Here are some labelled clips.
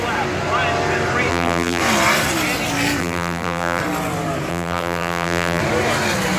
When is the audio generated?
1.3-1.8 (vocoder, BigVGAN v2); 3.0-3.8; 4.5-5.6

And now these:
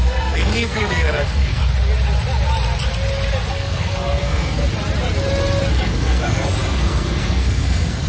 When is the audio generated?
0.0-1.6 (codec, SNAC); 3.5-4.6; 5.7-8.1

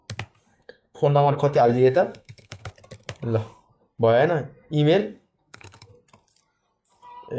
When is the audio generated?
0.5-2.7 (codec, SNAC); 5.0-5.9

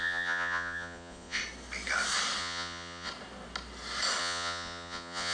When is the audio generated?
0.0-1.4 (vocoder, Vocos); 2.4-3.1; 4.2-5.3